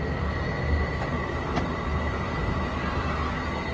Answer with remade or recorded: recorded